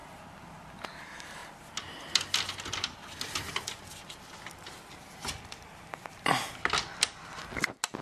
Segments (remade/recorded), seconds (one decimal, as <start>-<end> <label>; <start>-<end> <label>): 0.0-8.0 recorded